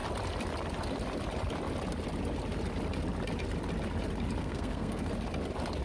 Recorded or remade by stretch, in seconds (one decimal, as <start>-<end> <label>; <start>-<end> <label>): 0.0-4.4 recorded; 4.4-5.1 remade; 5.1-5.8 recorded